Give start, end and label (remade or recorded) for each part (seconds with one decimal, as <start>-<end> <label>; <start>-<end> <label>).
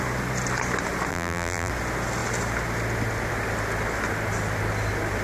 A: 0.0-1.1 recorded; 1.1-1.7 remade; 1.7-5.2 recorded